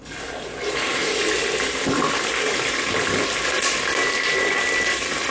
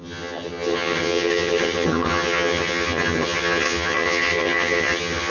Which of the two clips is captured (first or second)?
first